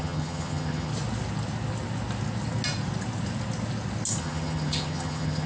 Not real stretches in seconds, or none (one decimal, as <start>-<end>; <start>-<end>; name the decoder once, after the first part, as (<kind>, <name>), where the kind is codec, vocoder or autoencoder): 0.0-0.9 (vocoder, HiFi-GAN); 4.2-5.5